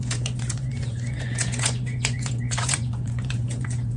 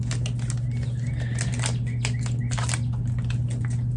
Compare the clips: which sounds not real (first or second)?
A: first